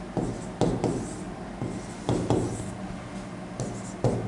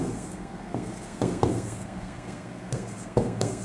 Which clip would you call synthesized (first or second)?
second